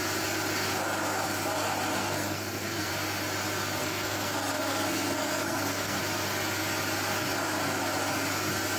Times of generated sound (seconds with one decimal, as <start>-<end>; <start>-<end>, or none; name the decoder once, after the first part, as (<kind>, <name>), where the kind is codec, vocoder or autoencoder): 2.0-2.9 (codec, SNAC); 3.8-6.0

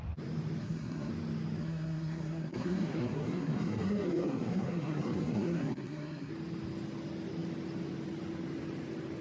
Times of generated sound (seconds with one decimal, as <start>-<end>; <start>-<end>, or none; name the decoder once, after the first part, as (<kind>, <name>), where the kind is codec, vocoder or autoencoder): 0.6-1.1 (codec, SNAC); 1.6-6.3

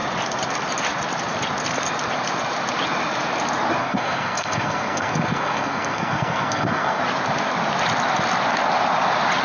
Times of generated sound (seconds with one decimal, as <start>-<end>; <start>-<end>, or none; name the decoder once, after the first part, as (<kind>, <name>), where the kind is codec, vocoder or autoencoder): 3.8-7.0 (codec, SNAC)

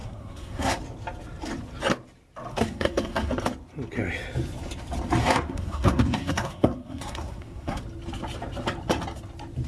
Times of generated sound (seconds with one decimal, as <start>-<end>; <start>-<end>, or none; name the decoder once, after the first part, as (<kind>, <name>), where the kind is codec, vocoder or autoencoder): 0.0-0.8 (codec, SNAC); 2.5-3.3; 5.2-7.8

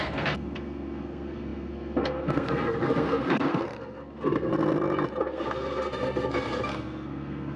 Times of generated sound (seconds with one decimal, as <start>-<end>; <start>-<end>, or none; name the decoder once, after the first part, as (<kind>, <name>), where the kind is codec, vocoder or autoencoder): 0.0-4.5 (codec, SNAC); 5.2-7.6